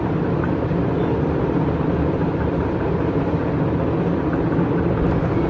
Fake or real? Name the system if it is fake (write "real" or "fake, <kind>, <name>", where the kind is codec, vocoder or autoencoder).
real